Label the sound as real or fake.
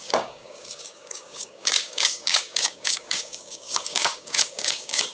fake